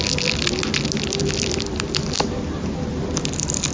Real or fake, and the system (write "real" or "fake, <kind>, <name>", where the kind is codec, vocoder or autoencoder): real